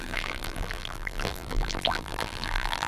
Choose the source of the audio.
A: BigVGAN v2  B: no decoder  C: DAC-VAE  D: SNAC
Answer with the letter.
A